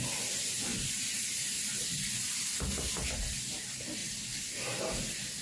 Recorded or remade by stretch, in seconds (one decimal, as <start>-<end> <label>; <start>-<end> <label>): 0.0-5.4 recorded